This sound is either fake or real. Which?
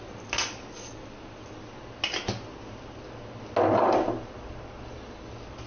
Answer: real